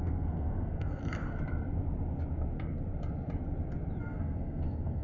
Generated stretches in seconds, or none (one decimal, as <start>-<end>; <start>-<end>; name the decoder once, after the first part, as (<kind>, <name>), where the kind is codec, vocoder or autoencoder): 0.0-1.0 (codec, SNAC); 4.0-5.0